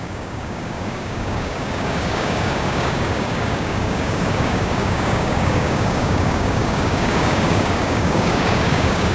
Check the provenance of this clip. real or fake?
fake